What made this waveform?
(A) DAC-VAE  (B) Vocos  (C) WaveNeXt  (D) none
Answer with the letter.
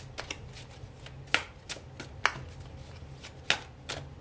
D